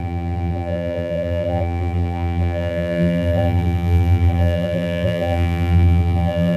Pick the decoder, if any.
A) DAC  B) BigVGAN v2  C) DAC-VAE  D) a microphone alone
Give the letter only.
B